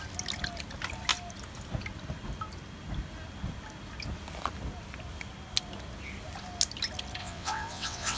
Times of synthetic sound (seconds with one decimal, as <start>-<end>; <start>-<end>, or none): 7.2-8.2

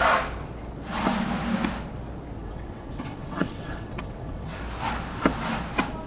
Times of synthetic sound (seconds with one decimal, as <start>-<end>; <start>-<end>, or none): 2.4-4.6